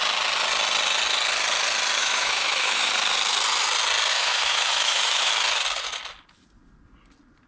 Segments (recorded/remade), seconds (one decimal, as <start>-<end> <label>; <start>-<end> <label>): 0.0-2.0 recorded; 2.0-2.9 remade; 2.9-4.1 recorded; 4.1-5.3 remade; 5.3-7.5 recorded